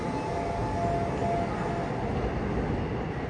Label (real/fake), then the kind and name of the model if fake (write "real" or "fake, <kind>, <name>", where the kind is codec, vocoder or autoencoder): real